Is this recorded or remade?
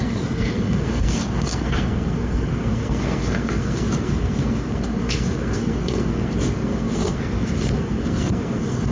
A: remade